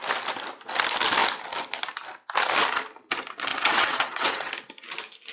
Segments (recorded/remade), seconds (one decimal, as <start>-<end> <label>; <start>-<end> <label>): 0.0-3.5 recorded; 3.5-4.5 remade; 4.5-5.3 recorded